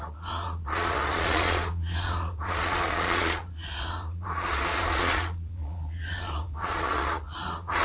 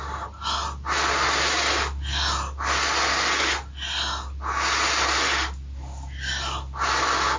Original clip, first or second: second